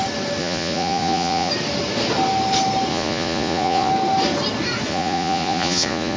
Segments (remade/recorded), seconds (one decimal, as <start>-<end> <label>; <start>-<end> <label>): 0.0-0.4 recorded; 0.4-1.5 remade; 1.5-2.9 recorded; 2.9-3.9 remade; 3.9-4.9 recorded; 4.9-6.2 remade